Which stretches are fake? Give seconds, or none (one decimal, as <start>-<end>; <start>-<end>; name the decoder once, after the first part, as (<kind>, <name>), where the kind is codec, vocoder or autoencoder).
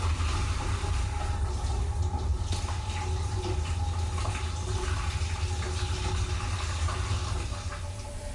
none